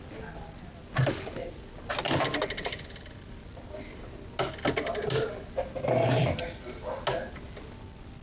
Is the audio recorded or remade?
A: recorded